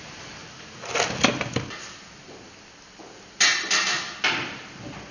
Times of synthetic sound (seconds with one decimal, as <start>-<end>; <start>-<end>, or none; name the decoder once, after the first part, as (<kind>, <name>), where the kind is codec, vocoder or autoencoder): none